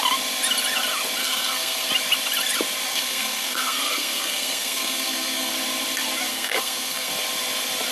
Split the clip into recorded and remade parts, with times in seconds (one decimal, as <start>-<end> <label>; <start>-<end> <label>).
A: 0.0-1.2 recorded; 1.2-1.9 remade; 1.9-2.9 recorded; 2.9-5.5 remade; 5.5-6.3 recorded; 6.3-7.1 remade; 7.1-7.9 recorded